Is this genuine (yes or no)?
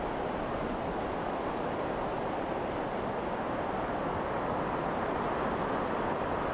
yes